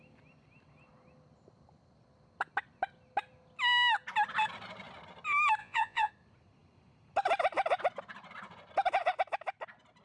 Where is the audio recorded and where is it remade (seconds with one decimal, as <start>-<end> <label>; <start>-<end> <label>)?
0.0-5.6 recorded; 5.6-6.1 remade; 6.1-10.0 recorded